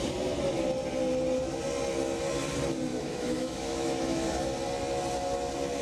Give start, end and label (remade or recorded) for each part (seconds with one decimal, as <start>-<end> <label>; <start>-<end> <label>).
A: 0.0-2.9 recorded; 2.9-4.4 remade; 4.4-5.8 recorded